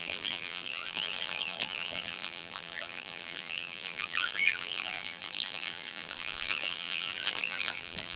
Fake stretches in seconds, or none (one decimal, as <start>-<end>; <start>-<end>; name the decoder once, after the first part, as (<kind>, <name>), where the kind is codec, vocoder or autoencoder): 0.0-8.2 (vocoder, BigVGAN v2)